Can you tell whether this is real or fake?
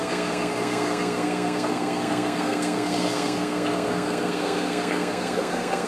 fake